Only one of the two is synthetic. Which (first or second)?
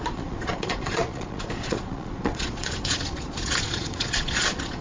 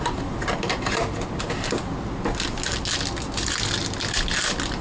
first